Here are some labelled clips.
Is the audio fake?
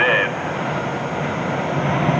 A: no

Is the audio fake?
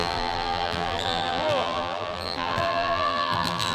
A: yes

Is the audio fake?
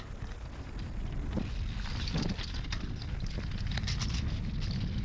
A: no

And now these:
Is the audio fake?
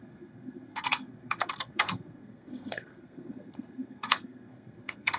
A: yes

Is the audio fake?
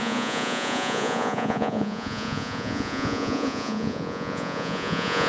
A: yes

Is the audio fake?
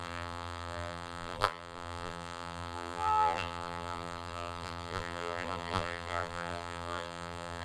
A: yes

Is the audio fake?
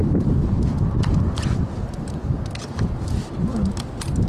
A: no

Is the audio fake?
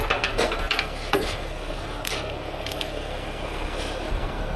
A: yes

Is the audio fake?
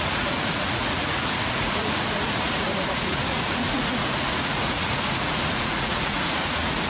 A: yes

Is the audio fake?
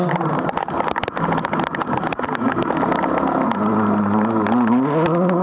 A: no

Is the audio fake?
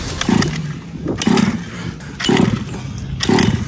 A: no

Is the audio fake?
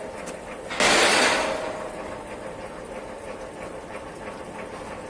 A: no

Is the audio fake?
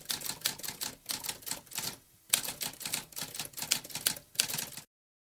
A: no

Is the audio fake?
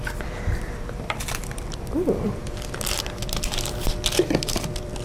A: yes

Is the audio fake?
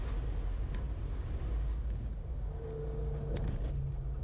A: no